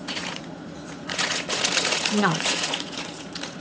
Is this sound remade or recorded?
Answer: remade